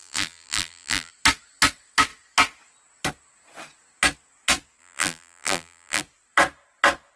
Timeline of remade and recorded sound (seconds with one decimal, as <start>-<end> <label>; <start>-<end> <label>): 0.0-1.1 remade; 1.1-4.8 recorded; 4.8-6.0 remade; 6.0-7.2 recorded